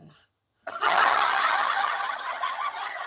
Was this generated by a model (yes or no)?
yes